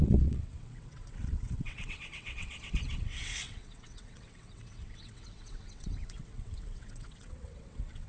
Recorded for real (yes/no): no